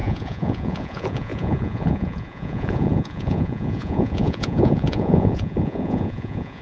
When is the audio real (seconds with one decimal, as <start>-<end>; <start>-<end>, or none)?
none